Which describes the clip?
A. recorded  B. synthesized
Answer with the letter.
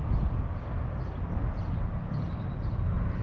A